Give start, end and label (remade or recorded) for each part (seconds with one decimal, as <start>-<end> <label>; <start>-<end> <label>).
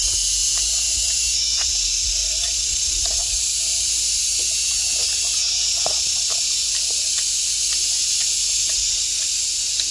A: 0.0-9.9 recorded